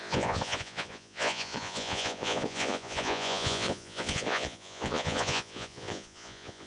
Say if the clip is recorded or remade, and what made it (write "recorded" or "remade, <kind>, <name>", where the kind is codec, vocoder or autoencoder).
remade, vocoder, Vocos